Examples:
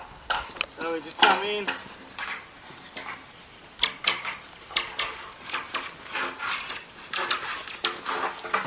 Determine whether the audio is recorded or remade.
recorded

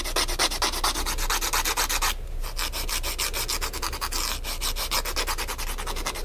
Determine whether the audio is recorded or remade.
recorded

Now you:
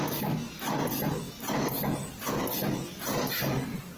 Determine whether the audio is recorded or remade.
recorded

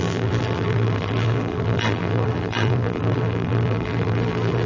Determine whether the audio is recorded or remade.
remade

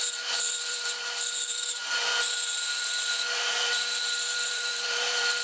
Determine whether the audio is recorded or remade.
remade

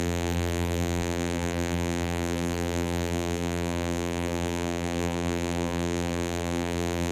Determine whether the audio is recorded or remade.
remade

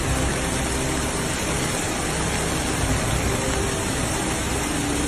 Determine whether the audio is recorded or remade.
recorded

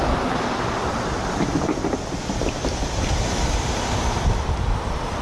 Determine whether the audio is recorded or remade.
remade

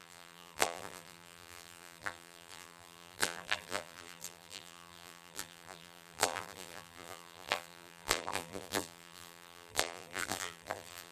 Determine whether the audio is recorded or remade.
remade